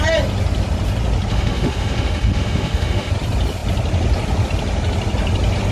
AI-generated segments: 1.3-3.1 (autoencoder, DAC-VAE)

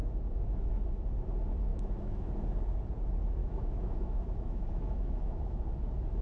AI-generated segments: 1.7-2.3 (autoencoder, DAC-VAE); 3.4-5.6

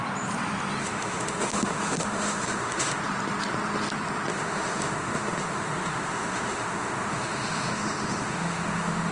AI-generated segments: 0.8-3.0 (autoencoder, DAC-VAE); 4.3-9.1

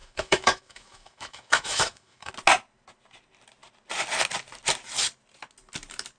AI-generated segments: 0.0-2.3 (autoencoder, DAC-VAE)